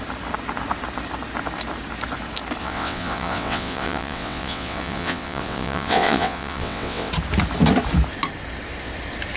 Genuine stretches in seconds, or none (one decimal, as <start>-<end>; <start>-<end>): 0.0-2.6; 7.1-9.4